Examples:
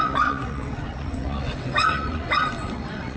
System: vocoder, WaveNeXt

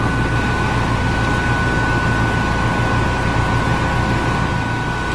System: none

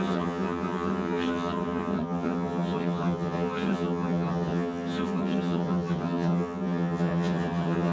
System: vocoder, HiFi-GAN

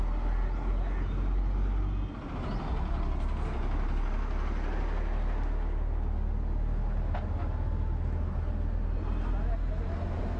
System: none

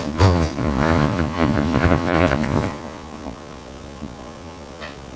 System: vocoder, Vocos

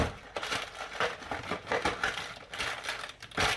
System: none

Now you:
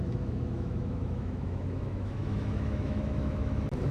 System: autoencoder, DAC-VAE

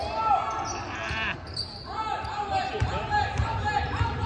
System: none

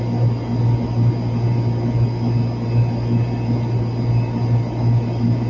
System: none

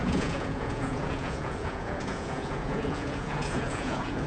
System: vocoder, Vocos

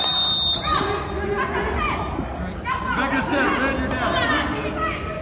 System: none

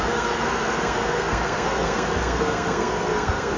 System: codec, SNAC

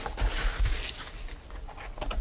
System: none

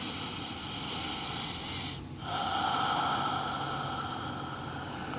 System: none